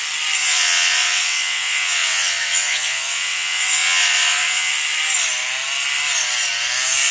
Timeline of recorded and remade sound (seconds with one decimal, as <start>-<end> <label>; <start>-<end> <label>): 0.0-0.4 recorded; 0.4-4.7 remade; 4.7-7.1 recorded